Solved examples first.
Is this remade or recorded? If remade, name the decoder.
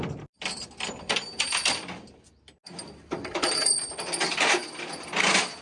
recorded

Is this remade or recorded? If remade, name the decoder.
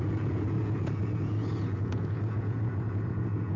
remade, vocoder, Vocos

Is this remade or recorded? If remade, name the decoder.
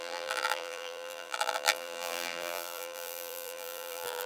remade, vocoder, BigVGAN v2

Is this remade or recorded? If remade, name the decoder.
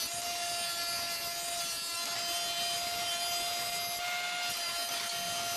recorded